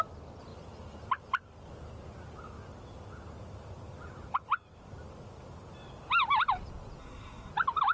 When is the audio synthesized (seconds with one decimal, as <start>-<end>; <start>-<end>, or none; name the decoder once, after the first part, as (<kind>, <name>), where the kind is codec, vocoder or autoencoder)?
7.0-7.5 (codec, SNAC)